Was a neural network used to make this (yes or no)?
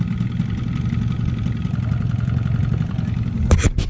no